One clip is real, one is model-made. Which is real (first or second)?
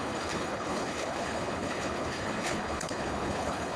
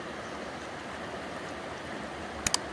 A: second